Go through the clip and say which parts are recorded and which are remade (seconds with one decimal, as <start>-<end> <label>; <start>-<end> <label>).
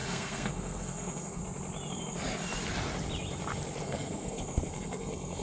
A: 0.0-1.4 remade; 1.4-3.8 recorded; 3.8-5.4 remade